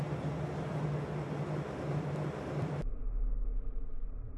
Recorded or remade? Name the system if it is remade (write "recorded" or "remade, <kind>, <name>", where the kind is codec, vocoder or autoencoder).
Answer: recorded